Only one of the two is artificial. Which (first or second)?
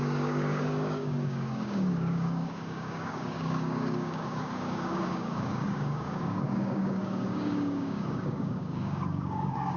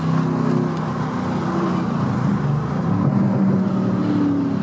first